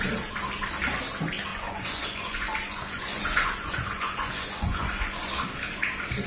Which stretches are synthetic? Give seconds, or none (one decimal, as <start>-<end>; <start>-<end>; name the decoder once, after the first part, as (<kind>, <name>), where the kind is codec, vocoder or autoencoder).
1.5-5.3 (vocoder, Vocos)

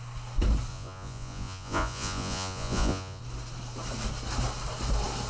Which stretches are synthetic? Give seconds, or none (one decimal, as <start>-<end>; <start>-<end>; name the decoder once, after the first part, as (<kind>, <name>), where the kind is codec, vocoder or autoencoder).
0.7-3.2 (vocoder, Vocos)

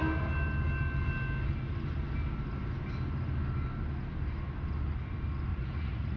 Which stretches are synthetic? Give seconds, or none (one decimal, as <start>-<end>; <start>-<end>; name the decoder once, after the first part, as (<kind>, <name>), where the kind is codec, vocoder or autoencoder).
5.5-6.2 (vocoder, Vocos)

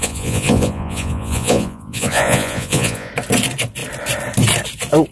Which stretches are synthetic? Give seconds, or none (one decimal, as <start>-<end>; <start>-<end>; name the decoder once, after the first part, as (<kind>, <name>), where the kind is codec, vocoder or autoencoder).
0.0-3.1 (vocoder, Vocos)